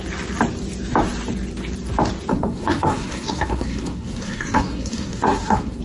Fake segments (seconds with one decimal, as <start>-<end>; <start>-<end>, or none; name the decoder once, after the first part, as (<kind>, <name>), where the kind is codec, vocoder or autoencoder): 2.3-5.8 (codec, SNAC)